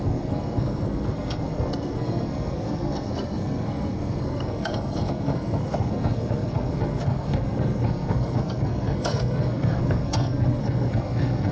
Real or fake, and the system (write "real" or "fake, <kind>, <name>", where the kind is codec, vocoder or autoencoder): fake, codec, SNAC